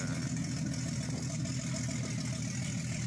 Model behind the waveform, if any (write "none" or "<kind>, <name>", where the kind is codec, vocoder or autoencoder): vocoder, BigVGAN v2